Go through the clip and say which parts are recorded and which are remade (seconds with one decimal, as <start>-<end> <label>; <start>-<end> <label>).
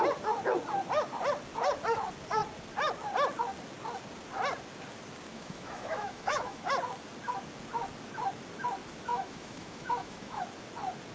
0.0-5.3 recorded; 5.3-6.7 remade; 6.7-9.1 recorded; 9.1-10.4 remade; 10.4-11.1 recorded